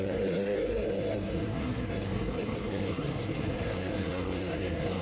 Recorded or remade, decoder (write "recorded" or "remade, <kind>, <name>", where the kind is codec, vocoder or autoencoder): remade, codec, SNAC